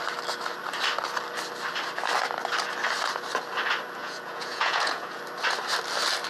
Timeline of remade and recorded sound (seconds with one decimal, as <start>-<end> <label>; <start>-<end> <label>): 0.0-4.0 recorded; 4.0-5.2 remade; 5.2-6.3 recorded